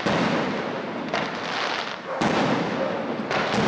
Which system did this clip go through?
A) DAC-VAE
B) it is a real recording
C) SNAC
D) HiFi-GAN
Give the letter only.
B